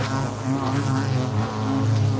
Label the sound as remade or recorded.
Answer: recorded